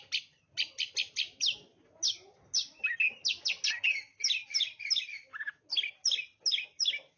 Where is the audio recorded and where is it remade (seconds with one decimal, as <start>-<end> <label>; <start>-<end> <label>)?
0.0-7.2 recorded